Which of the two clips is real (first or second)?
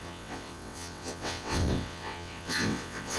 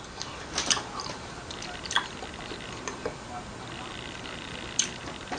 second